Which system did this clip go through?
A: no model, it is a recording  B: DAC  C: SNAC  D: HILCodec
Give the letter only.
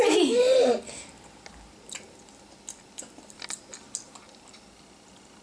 A